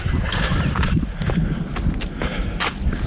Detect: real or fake real